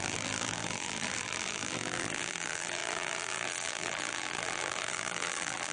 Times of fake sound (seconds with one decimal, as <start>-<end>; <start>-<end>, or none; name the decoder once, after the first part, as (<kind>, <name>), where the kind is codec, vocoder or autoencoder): 0.0-5.7 (vocoder, BigVGAN v2)